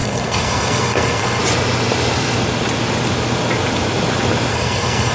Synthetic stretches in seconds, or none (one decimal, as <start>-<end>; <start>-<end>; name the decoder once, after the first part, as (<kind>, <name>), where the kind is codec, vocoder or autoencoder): 0.0-1.4 (codec, SNAC); 4.5-5.1